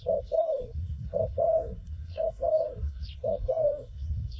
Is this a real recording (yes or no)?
no